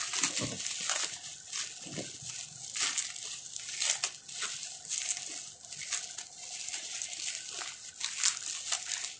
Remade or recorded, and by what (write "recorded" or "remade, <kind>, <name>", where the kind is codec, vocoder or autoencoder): recorded